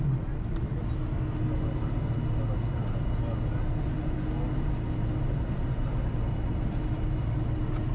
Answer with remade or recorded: recorded